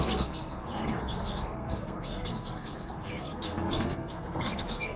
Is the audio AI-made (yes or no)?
yes